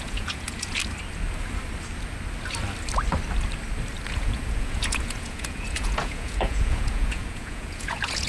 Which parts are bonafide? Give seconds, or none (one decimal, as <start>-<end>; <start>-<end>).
0.8-4.1